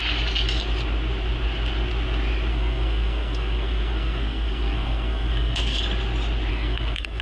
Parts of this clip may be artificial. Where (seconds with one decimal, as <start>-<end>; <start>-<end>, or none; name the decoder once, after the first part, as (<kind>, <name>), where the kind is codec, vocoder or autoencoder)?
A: 2.5-5.8 (codec, SNAC); 6.5-7.2